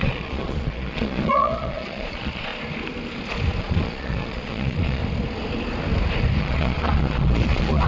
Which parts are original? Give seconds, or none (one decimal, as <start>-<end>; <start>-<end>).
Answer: 2.5-3.6; 5.0-6.4